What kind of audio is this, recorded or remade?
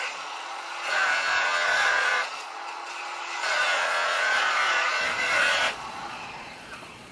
remade